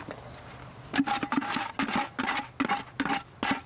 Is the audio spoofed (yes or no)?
no